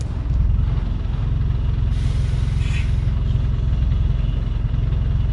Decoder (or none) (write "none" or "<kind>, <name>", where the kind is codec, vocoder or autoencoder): none